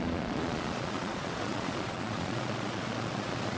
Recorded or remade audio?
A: remade